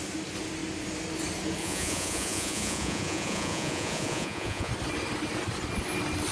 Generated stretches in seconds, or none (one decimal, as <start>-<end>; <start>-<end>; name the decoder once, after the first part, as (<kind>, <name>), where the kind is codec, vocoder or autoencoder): 1.6-4.7 (vocoder, Vocos)